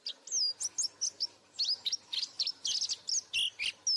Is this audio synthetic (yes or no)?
no